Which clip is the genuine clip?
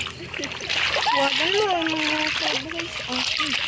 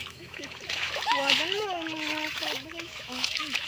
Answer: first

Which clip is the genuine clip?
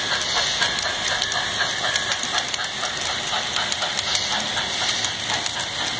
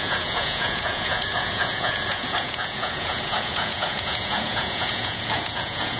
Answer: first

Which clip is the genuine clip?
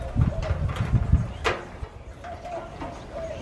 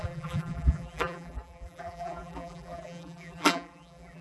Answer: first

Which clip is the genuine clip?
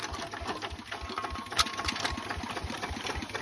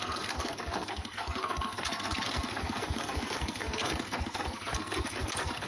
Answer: first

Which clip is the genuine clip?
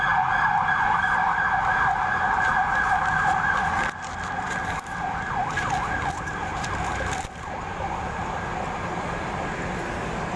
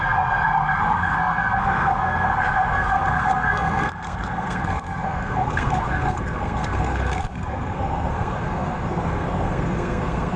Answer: first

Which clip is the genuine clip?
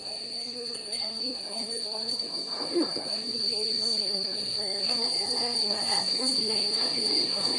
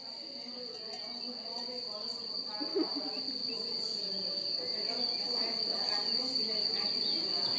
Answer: second